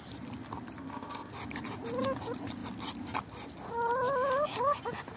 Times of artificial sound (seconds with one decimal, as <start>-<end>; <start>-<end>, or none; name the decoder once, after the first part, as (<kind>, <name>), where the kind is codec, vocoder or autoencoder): 0.8-1.3 (codec, ZipCodec)